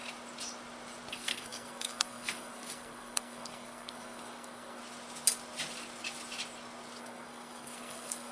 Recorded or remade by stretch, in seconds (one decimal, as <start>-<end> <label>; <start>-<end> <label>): 0.0-1.1 recorded; 1.1-4.8 remade; 4.8-7.0 recorded; 7.0-8.3 remade